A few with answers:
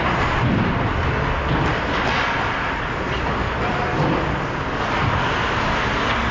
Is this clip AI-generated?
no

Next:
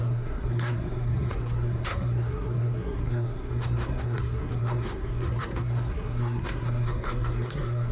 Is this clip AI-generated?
yes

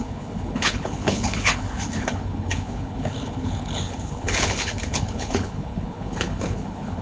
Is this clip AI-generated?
yes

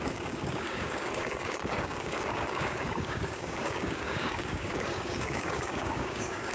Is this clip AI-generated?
yes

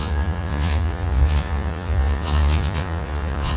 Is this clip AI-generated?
yes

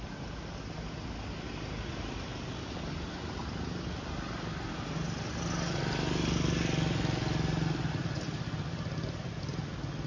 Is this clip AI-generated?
no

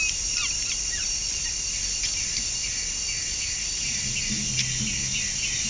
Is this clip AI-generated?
no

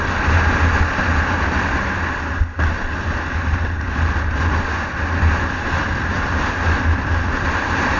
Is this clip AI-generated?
no